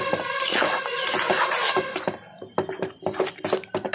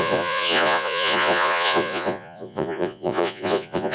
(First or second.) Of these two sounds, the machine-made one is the second